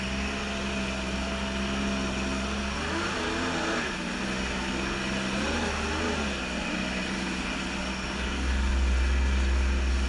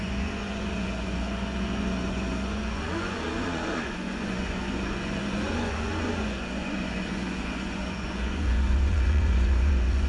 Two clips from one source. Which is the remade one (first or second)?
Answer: second